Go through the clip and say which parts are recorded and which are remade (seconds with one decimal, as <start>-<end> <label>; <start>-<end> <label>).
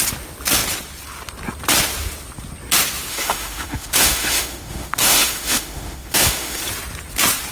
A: 0.0-3.1 recorded; 3.1-6.6 remade; 6.6-7.5 recorded